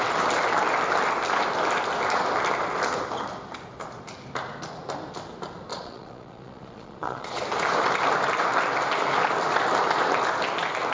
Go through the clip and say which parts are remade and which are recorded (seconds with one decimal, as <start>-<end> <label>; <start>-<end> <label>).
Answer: 0.0-5.7 recorded; 5.7-7.4 remade; 7.4-10.9 recorded